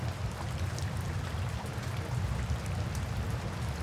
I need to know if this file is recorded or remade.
recorded